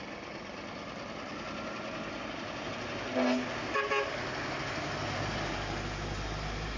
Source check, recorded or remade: recorded